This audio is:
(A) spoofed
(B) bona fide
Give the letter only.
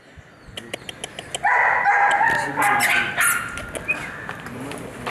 B